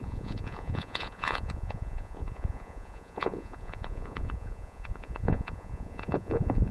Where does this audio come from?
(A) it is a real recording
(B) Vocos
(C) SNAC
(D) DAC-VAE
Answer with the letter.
B